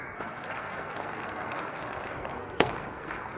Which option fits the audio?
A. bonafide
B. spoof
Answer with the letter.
B